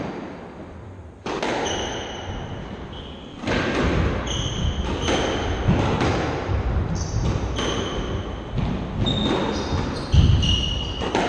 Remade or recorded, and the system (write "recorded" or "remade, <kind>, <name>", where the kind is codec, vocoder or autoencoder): recorded